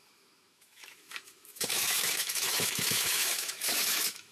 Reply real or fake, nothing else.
fake